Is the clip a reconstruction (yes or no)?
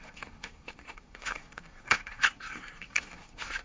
yes